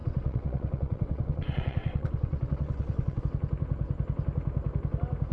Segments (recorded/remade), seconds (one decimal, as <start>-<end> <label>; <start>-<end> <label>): 0.0-3.2 remade; 3.2-5.3 recorded